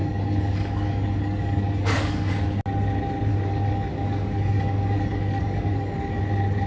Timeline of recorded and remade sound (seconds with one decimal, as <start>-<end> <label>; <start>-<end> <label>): 0.0-2.3 remade; 2.3-3.3 recorded; 3.3-6.2 remade; 6.2-6.7 recorded